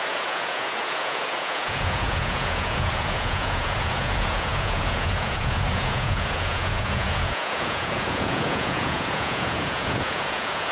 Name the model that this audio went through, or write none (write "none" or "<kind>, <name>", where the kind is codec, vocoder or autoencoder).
vocoder, Vocos